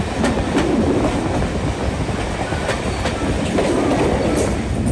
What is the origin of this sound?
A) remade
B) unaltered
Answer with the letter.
B